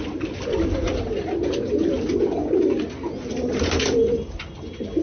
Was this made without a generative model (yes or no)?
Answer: yes